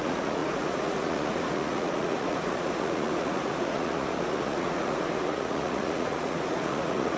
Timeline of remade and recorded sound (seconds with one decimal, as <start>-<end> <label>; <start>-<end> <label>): 0.0-7.2 remade